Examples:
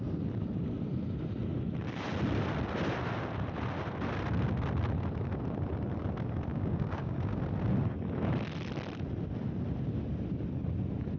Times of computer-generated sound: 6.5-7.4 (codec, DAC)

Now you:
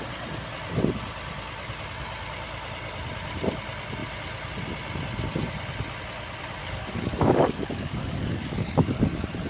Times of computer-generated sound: 6.6-9.0 (codec, DAC)

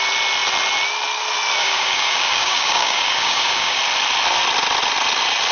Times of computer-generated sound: 1.6-3.8 (codec, DAC)